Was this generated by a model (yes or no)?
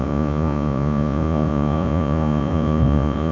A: yes